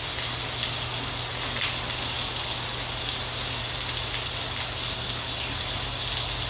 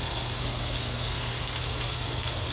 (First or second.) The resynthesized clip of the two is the second